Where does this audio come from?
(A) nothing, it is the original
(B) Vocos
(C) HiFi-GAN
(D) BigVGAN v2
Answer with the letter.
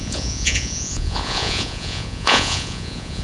B